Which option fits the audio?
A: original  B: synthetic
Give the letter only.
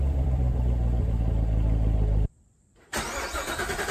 B